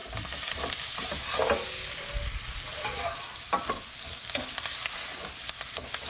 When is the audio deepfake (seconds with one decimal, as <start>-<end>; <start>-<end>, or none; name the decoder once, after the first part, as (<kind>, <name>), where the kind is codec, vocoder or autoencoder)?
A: none